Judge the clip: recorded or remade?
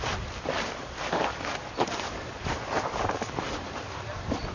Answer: recorded